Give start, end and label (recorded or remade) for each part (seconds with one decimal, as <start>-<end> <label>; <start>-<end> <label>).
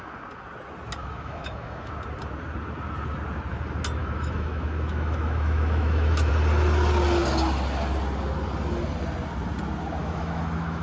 0.0-1.0 recorded; 1.0-1.9 remade; 1.9-4.0 recorded; 4.0-6.3 remade; 6.3-10.0 recorded; 10.0-10.8 remade